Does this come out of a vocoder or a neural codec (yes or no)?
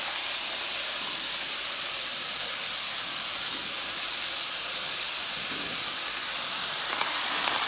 yes